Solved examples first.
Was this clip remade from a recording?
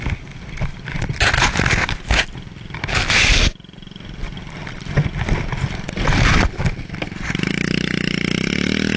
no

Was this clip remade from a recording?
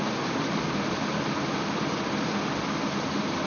no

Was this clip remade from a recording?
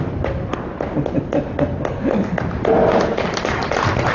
no